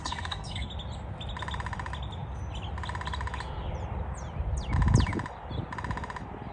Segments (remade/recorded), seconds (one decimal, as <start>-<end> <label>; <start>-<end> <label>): 0.0-0.7 remade; 0.7-6.5 recorded